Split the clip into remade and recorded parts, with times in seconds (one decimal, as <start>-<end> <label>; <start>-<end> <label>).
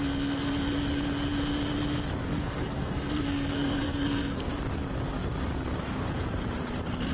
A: 0.0-2.3 recorded; 2.3-4.5 remade; 4.5-7.1 recorded